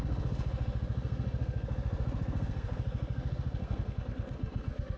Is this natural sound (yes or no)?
no